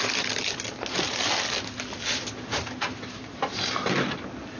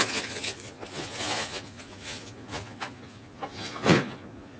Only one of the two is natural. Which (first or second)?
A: first